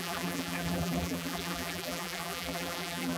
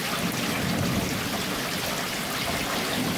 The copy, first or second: first